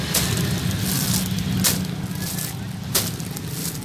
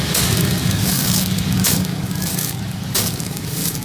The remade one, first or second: second